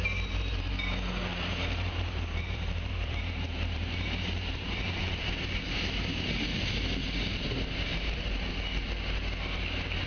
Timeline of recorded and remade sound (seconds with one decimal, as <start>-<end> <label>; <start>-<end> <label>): 0.0-0.7 remade; 0.7-1.3 recorded; 1.3-5.6 remade; 5.6-7.9 recorded; 7.9-8.5 remade; 8.5-10.1 recorded